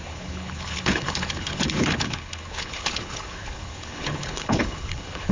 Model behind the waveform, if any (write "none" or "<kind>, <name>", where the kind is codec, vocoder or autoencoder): codec, HILCodec